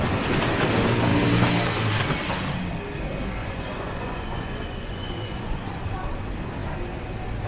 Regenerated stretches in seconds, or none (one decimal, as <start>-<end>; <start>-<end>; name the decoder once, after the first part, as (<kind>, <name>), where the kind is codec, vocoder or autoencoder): 3.4-5.7 (vocoder, Vocos)